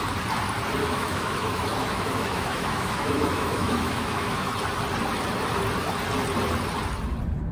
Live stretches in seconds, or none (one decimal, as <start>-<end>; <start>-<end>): 0.0-0.8; 4.5-7.5